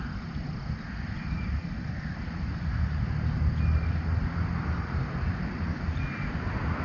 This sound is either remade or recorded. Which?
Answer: recorded